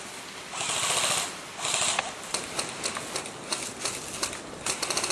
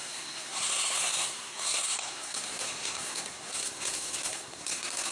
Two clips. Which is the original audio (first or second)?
first